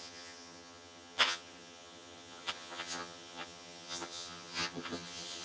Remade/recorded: remade